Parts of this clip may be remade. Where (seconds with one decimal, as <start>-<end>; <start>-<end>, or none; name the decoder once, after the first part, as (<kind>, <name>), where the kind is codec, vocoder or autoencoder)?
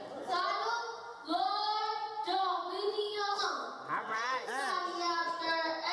1.1-4.6 (vocoder, Vocos)